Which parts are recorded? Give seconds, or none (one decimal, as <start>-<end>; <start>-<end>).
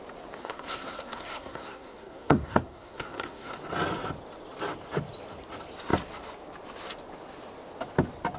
0.0-0.4; 3.5-8.4